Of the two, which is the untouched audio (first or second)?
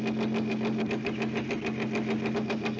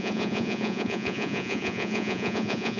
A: first